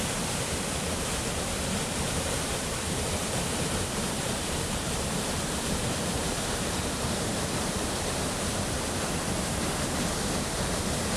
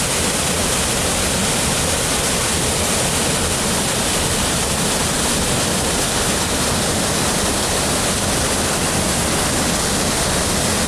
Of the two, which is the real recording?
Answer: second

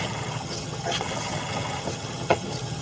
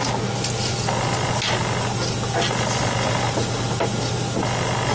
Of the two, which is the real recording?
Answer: second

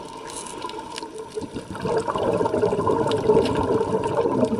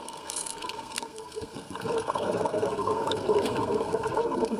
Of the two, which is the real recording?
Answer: first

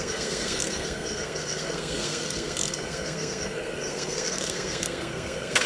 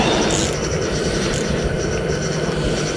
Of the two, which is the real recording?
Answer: second